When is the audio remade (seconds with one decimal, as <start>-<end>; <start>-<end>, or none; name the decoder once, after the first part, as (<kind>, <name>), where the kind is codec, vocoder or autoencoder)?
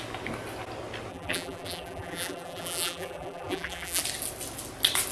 1.1-4.0 (vocoder, BigVGAN v2)